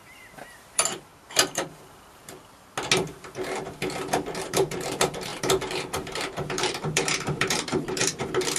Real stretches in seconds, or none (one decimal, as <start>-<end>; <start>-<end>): 1.1-4.4